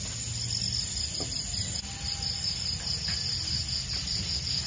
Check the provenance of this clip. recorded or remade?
recorded